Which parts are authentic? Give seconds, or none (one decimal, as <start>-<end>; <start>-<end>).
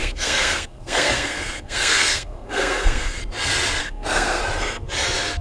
3.2-3.8; 4.4-5.4